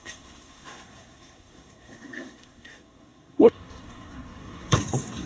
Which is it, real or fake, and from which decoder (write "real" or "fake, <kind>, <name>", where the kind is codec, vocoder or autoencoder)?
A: fake, codec, SNAC